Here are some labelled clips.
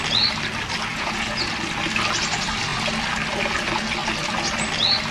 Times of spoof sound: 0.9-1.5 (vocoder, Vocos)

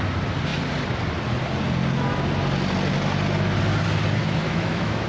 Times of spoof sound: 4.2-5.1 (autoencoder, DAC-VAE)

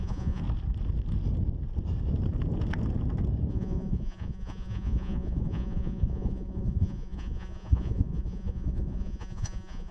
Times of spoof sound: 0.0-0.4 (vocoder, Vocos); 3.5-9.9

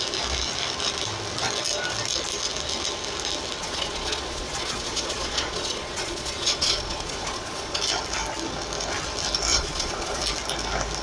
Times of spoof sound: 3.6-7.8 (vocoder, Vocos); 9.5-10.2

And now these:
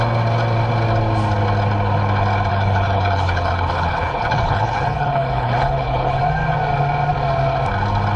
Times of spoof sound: 2.5-6.2 (codec, HILCodec)

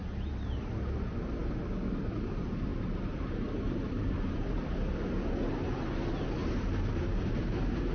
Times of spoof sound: 0.0-0.7 (vocoder, BigVGAN v2); 2.7-4.7; 6.4-7.5